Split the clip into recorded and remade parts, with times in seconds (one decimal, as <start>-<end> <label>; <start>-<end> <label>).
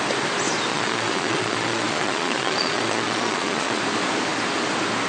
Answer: 0.0-0.7 recorded; 0.7-3.8 remade; 3.8-5.1 recorded